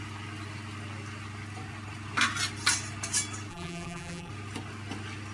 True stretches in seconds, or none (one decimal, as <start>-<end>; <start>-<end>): 0.0-3.5; 4.3-5.3